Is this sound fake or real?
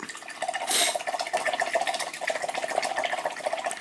real